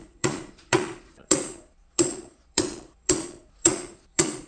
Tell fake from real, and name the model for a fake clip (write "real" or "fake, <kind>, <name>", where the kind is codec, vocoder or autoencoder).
fake, vocoder, Vocos